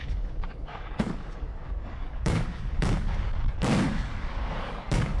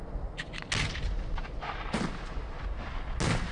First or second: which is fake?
first